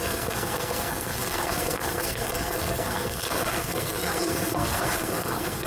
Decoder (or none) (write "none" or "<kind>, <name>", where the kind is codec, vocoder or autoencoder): codec, SNAC